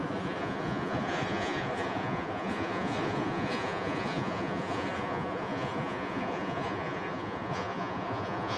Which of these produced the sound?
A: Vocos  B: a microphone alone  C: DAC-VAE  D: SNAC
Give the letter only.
A